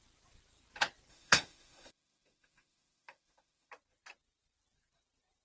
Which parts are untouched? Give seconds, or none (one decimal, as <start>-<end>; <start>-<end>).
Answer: 0.0-1.1; 3.7-5.4